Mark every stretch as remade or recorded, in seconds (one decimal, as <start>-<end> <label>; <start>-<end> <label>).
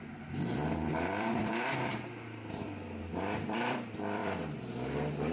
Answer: 0.0-5.3 remade